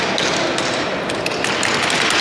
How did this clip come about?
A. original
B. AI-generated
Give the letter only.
A